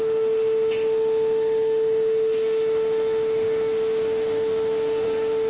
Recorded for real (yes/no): no